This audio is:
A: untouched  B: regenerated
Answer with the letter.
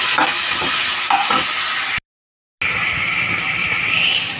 A